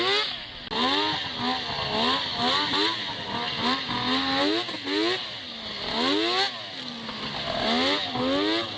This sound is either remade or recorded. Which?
recorded